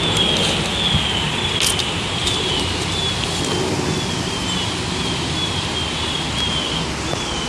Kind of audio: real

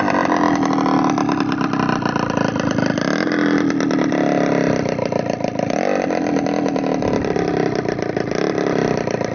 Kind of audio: real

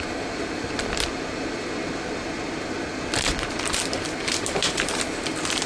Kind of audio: real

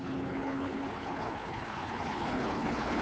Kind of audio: fake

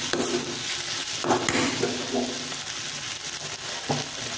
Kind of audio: real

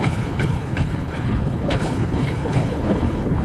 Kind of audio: fake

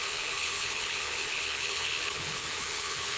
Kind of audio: fake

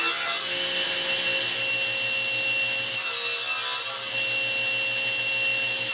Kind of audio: real